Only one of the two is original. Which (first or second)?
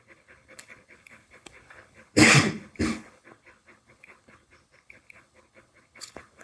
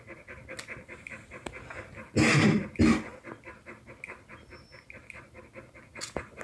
second